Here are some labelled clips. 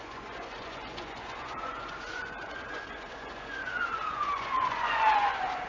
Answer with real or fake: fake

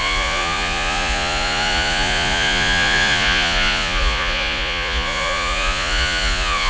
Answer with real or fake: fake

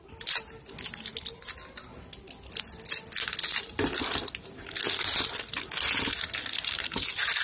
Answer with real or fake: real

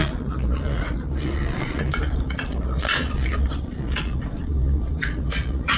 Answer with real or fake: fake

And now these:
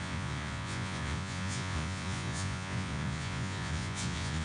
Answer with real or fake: fake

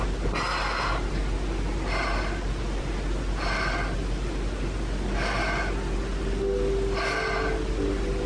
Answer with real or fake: real